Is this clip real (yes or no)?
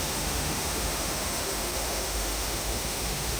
no